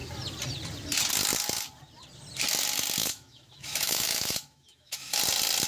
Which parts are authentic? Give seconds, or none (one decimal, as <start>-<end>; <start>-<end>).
0.0-3.0; 5.2-5.7